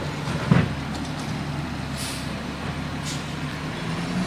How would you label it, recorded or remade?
recorded